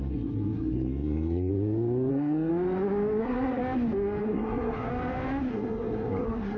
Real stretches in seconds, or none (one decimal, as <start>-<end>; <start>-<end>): 1.5-2.1; 2.5-3.2; 3.6-4.2; 4.9-5.5